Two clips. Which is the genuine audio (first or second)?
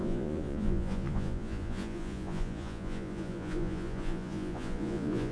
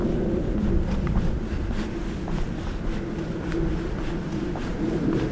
second